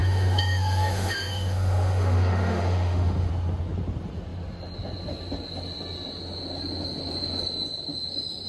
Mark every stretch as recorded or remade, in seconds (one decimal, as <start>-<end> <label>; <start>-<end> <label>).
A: 0.0-3.3 remade; 3.3-8.5 recorded